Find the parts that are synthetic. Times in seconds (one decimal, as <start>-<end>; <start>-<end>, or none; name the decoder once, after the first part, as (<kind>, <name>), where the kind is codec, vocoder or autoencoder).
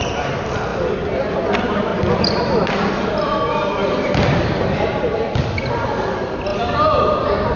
0.7-1.5 (vocoder, BigVGAN v2); 1.9-2.7; 3.8-5.0